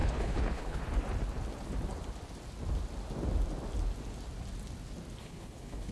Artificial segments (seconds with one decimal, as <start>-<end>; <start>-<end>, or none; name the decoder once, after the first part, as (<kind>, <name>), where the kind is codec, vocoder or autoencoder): 0.0-0.8 (codec, HILCodec); 5.2-5.9